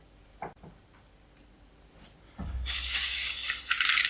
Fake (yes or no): no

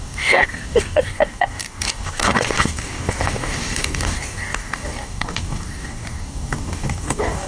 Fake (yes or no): yes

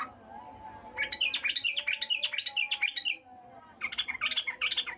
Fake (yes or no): no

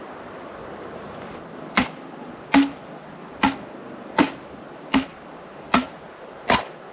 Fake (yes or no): no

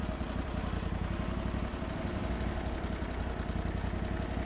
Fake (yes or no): no